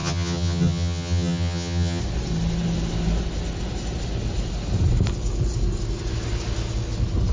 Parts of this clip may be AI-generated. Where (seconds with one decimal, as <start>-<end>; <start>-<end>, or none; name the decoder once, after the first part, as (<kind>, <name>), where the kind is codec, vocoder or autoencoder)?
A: 0.0-2.0 (vocoder, HiFi-GAN)